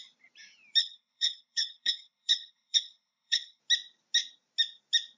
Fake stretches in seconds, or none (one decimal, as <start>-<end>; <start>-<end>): 0.8-3.6

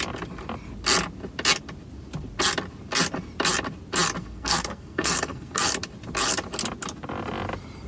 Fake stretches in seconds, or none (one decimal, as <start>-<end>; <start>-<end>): 4.2-5.6

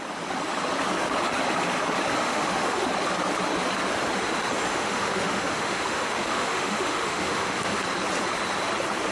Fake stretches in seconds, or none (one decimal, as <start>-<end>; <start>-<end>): 2.2-2.9; 4.7-7.8